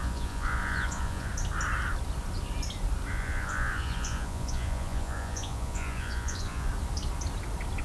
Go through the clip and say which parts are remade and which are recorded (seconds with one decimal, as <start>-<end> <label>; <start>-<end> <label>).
0.0-1.3 remade; 1.3-3.1 recorded; 3.1-6.7 remade; 6.7-7.8 recorded